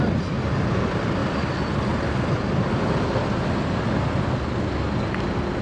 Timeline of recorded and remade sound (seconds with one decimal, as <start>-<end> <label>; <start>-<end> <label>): 0.0-5.6 recorded